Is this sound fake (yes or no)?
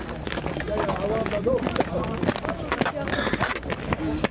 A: no